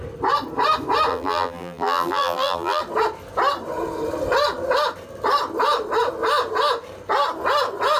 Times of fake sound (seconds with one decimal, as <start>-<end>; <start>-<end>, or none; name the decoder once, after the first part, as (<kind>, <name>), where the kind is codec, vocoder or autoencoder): 1.1-2.8 (vocoder, BigVGAN v2)